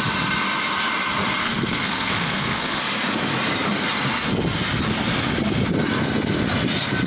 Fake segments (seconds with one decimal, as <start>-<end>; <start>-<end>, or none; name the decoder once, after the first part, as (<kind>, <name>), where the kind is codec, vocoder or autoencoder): 1.4-2.8 (codec, SNAC)